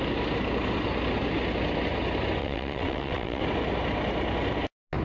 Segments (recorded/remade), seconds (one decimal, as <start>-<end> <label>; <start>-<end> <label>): 0.0-2.4 recorded; 2.4-3.4 remade; 3.4-5.0 recorded